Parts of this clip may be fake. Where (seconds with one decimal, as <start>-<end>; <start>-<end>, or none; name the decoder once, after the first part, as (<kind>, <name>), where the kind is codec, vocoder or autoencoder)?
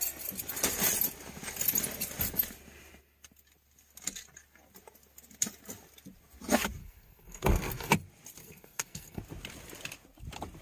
6.8-7.9 (codec, SNAC); 8.4-9.2